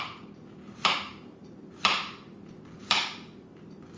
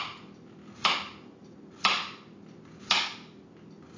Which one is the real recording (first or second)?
second